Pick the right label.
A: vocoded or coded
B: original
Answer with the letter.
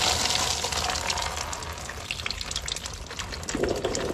B